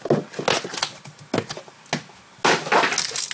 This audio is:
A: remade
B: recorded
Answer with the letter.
B